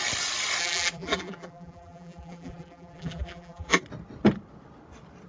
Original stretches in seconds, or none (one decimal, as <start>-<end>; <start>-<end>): 0.0-0.6; 3.8-5.3